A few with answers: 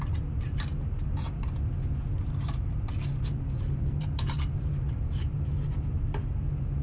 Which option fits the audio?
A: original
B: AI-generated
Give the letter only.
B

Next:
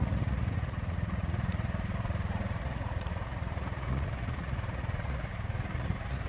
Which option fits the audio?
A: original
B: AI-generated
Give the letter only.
B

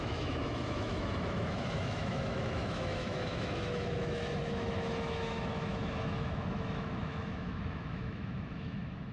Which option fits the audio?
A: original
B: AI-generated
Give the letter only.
B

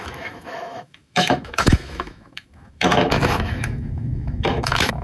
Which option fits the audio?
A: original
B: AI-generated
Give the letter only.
B